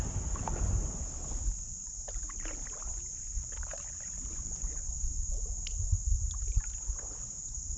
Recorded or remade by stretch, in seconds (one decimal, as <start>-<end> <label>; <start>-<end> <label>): 0.0-4.3 recorded; 4.3-5.4 remade; 5.4-7.8 recorded